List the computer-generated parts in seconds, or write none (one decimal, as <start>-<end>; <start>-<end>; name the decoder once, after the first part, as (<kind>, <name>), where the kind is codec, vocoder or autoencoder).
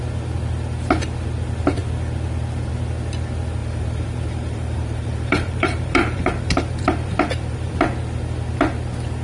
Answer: 3.6-7.7 (vocoder, BigVGAN v2)